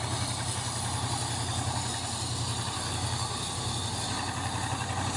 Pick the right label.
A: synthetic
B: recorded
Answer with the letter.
B